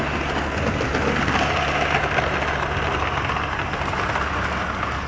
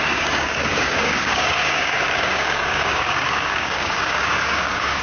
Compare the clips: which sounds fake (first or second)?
second